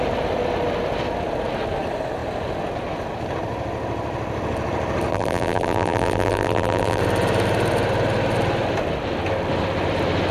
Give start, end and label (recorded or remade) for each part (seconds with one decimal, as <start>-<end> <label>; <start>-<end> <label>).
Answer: 0.0-5.1 recorded; 5.1-7.0 remade; 7.0-10.3 recorded